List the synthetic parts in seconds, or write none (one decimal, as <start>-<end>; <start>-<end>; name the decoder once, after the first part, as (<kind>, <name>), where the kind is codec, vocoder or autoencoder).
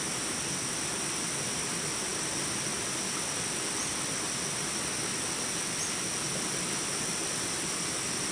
none